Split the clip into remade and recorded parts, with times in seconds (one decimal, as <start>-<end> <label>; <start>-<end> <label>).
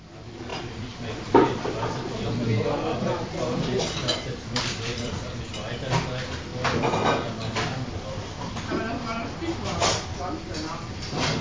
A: 0.0-0.5 recorded; 0.5-5.4 remade; 5.4-6.5 recorded; 6.5-8.5 remade; 8.5-11.4 recorded